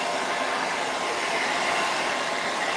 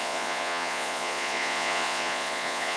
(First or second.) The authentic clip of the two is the first